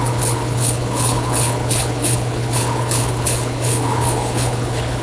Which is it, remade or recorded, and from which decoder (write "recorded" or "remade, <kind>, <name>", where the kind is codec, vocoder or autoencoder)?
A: remade, codec, HILCodec